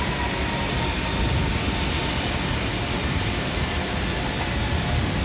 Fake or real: real